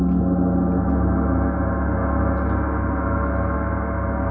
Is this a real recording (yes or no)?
yes